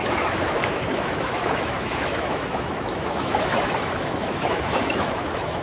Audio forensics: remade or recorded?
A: remade